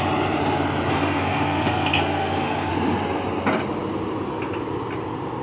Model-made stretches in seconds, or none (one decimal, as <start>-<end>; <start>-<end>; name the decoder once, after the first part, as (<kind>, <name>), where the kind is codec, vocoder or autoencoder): 0.9-2.7 (codec, SNAC)